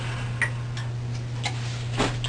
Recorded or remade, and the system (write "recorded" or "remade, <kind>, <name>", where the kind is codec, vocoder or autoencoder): recorded